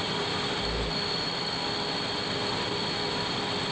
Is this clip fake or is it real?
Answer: real